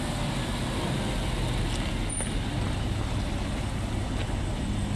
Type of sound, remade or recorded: recorded